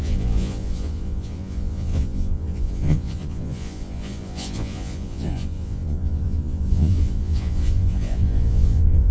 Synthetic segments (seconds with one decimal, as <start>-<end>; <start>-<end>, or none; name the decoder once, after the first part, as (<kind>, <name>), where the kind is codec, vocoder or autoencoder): 0.0-9.1 (vocoder, Vocos)